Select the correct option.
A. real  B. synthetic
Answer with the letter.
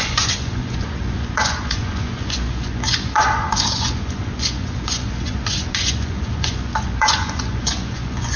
B